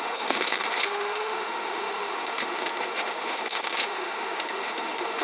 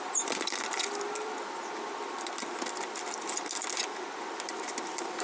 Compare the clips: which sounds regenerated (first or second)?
first